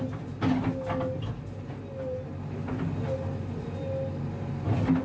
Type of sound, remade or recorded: recorded